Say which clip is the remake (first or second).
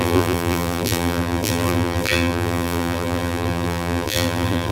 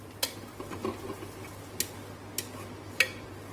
first